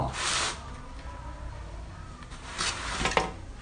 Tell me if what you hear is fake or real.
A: real